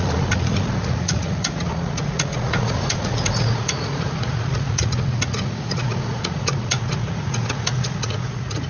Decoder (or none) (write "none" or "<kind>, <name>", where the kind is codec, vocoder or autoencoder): vocoder, Vocos